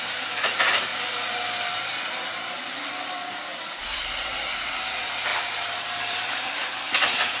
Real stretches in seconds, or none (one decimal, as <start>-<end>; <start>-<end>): 0.9-4.7